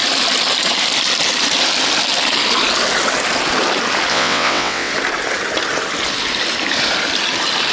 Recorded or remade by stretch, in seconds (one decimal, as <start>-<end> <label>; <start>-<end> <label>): 0.0-4.1 recorded; 4.1-4.9 remade; 4.9-7.7 recorded